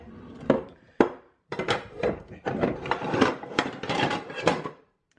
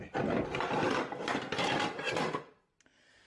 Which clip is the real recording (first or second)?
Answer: second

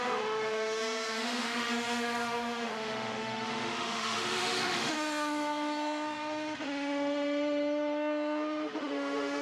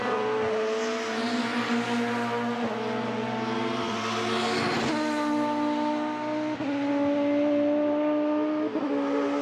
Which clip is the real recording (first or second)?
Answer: second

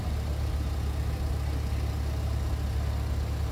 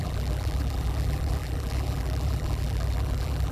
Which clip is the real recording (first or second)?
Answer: first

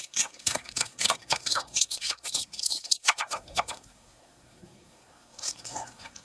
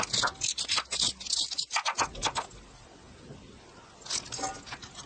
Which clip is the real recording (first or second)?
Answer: second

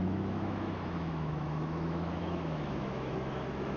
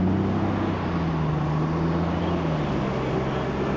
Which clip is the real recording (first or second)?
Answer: second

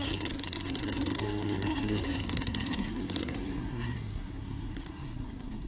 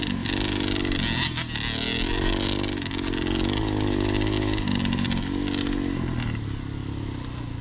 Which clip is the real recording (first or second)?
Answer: second